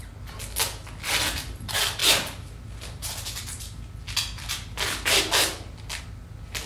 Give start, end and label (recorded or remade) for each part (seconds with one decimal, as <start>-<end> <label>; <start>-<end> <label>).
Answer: 0.0-6.7 recorded